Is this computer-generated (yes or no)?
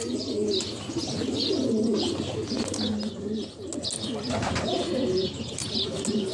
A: no